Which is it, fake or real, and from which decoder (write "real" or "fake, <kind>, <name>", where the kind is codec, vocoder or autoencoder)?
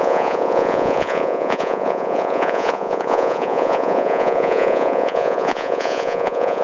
fake, vocoder, Vocos